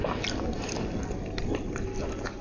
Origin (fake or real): real